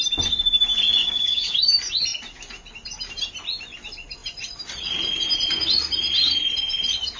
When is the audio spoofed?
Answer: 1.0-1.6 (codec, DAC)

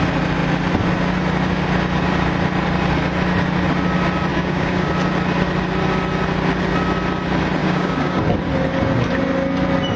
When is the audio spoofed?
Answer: 4.3-4.9 (codec, DAC); 7.6-8.2

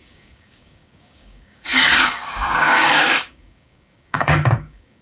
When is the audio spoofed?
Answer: 0.0-5.0 (codec, DAC)

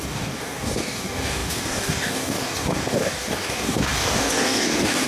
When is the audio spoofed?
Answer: 0.0-5.1 (codec, DAC)

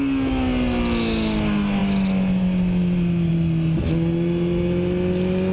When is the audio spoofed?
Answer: none

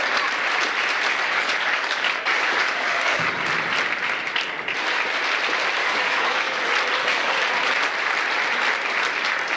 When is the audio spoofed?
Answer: 1.1-3.3 (codec, DAC); 5.8-6.6; 7.0-7.5

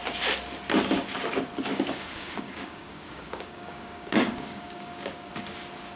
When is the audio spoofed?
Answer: 1.7-5.3 (codec, DAC)

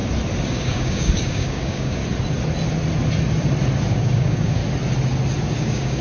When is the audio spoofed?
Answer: 0.5-2.0 (codec, DAC); 3.9-4.6; 5.6-6.0